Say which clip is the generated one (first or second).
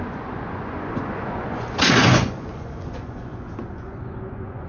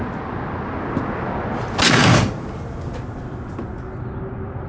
first